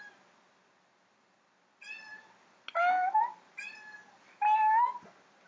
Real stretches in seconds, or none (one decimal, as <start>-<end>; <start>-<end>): 0.0-5.5